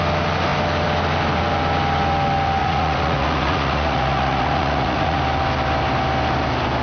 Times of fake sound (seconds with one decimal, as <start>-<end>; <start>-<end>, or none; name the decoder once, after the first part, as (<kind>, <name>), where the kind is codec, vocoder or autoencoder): 2.6-5.2 (vocoder, Vocos)